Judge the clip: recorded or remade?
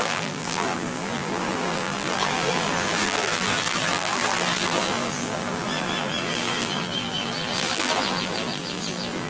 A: remade